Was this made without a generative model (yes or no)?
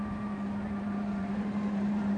no